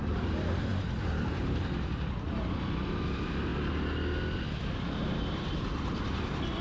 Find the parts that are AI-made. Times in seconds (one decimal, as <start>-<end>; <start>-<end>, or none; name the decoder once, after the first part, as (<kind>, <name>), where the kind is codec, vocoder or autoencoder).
0.0-3.5 (vocoder, BigVGAN v2); 4.6-6.6